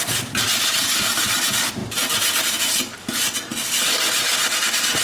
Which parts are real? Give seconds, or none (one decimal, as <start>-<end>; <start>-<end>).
0.0-5.0